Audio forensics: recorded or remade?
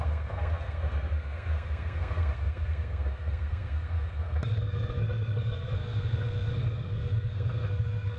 remade